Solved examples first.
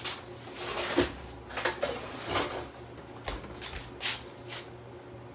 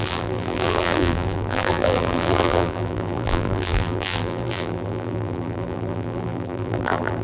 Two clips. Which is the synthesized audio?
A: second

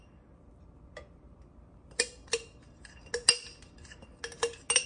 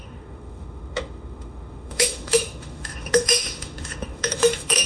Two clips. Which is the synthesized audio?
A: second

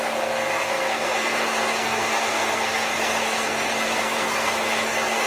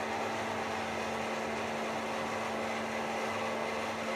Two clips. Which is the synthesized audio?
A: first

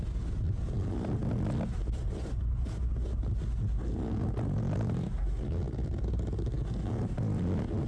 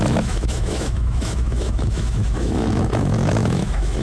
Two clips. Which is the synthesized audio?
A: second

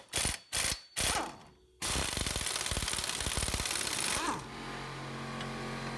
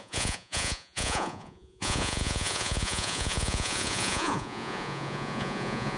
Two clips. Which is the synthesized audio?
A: second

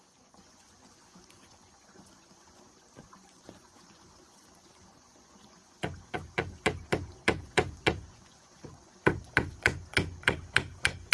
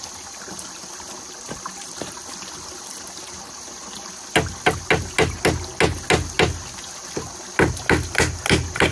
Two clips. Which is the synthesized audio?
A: first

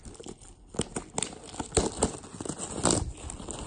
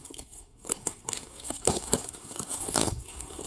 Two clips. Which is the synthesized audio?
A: second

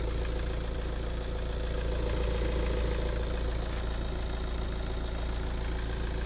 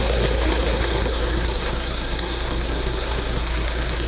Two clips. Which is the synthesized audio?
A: second